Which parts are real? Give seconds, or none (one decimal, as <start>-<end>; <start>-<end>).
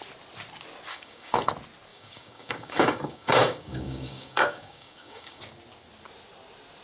0.0-0.9; 1.5-1.9; 5.4-6.8